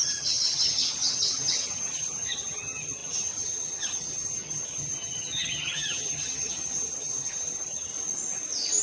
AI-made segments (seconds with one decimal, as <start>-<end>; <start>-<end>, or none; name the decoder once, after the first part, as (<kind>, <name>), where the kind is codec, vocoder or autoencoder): 0.0-7.9 (vocoder, HiFi-GAN)

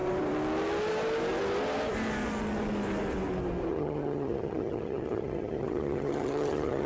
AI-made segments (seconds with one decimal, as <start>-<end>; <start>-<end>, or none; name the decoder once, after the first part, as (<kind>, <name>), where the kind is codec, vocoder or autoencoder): 3.7-6.9 (vocoder, HiFi-GAN)

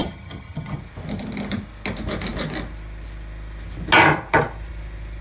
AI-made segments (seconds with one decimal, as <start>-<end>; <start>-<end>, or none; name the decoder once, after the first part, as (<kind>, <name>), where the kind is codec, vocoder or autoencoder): 0.0-0.8 (vocoder, HiFi-GAN)